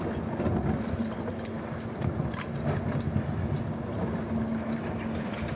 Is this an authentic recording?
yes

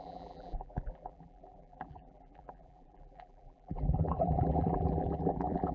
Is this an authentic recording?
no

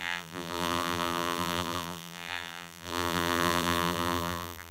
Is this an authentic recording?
no